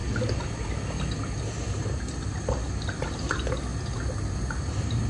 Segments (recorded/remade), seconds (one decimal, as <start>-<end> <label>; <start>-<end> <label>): 0.0-5.1 recorded